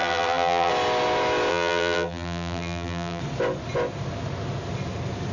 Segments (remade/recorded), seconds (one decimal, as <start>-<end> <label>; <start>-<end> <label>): 0.0-0.7 remade; 0.7-1.5 recorded; 1.5-3.2 remade; 3.2-5.3 recorded